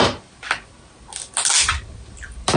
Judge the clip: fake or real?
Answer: real